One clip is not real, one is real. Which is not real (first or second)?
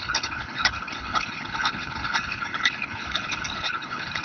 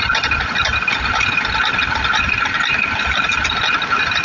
first